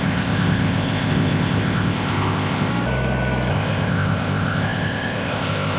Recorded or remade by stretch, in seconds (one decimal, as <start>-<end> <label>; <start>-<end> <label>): 0.0-2.7 remade; 2.7-3.5 recorded; 3.5-5.8 remade